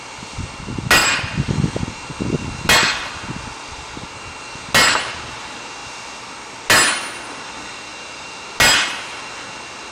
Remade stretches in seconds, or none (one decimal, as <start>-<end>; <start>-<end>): 1.0-1.5; 7.9-8.5